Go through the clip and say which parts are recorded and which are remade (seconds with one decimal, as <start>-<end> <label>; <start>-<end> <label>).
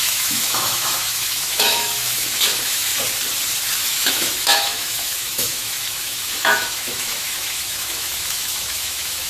0.0-2.9 remade; 2.9-3.8 recorded; 3.8-9.3 remade